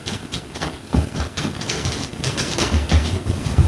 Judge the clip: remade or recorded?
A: remade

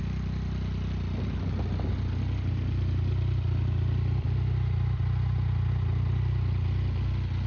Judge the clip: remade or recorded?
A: recorded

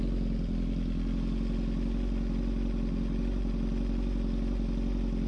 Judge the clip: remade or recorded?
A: recorded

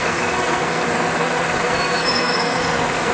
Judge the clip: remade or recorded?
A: remade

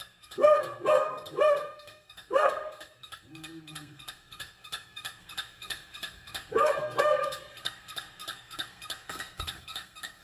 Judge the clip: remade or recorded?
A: remade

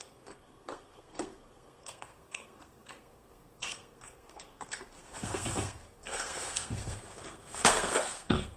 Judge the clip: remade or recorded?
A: remade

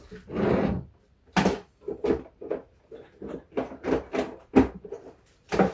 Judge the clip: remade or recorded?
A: recorded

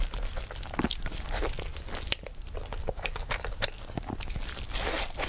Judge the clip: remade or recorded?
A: recorded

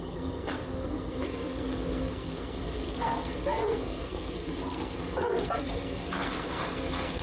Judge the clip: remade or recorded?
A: remade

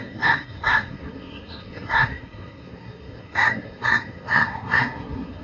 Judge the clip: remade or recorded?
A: remade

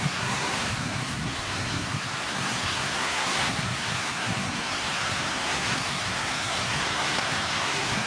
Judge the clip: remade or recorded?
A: remade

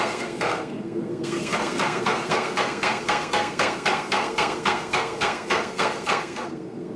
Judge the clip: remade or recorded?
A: remade